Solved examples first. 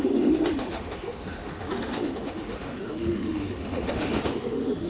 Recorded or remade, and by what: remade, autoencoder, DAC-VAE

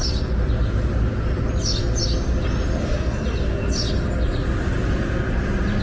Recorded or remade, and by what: recorded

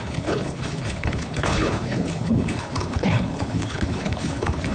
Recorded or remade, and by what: remade, codec, HILCodec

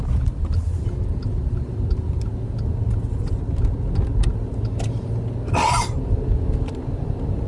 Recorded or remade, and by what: recorded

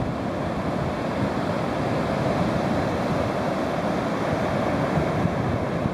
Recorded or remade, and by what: recorded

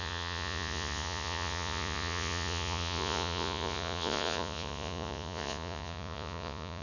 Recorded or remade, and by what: remade, vocoder, Vocos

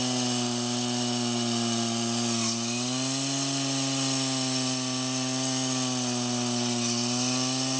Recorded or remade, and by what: recorded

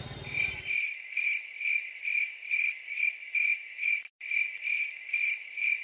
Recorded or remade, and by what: remade, vocoder, BigVGAN v2